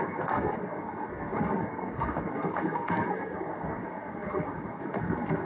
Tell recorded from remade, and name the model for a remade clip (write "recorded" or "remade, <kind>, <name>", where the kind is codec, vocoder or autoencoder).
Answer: remade, codec, SNAC